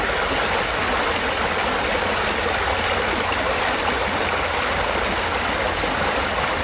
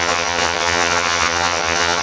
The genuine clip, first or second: first